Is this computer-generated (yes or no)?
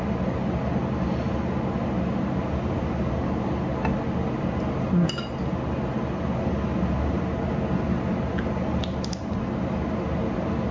no